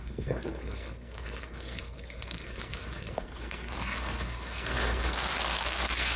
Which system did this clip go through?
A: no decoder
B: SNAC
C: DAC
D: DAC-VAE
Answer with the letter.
B